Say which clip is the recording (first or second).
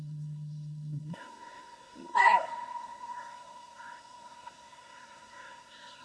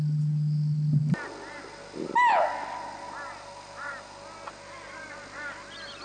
second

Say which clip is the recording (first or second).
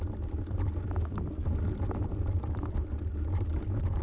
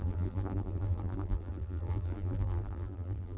first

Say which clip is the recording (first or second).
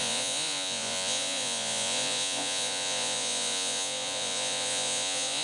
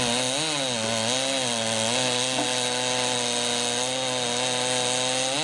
second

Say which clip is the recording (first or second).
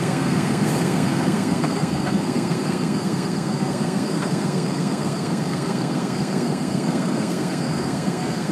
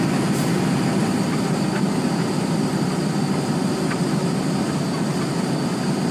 second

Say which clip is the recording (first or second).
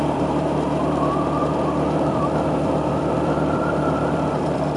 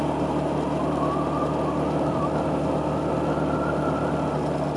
second